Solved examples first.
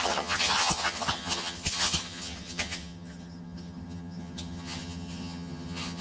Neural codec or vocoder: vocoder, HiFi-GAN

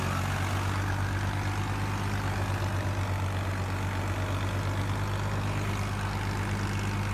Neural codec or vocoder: none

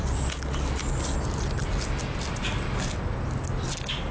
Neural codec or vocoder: none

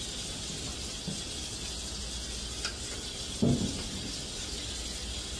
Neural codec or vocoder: none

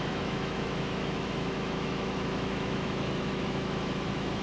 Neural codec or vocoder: autoencoder, DAC-VAE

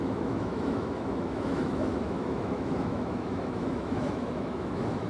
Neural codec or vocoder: autoencoder, DAC-VAE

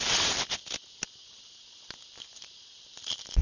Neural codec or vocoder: none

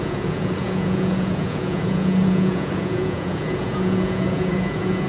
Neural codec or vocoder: vocoder, Vocos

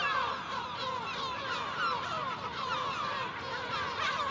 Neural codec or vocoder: none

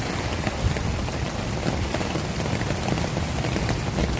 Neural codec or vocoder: none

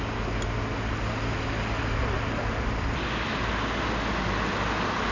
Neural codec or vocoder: none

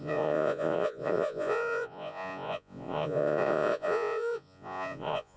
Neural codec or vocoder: vocoder, Vocos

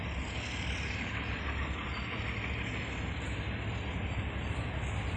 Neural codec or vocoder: none